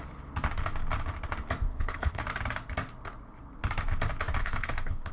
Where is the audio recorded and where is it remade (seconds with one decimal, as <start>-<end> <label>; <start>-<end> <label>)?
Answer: 0.0-1.7 recorded; 1.7-2.2 remade; 2.2-4.4 recorded; 4.4-5.1 remade